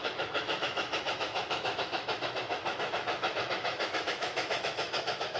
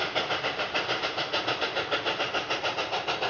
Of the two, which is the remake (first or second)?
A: first